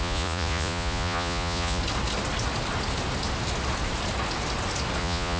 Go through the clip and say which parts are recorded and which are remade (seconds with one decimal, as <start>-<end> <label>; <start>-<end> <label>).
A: 0.0-1.8 remade; 1.8-5.0 recorded; 5.0-5.4 remade